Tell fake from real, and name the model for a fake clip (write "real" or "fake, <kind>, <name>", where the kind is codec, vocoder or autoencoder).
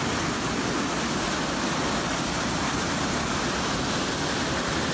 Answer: real